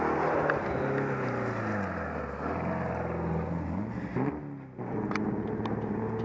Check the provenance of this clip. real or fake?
real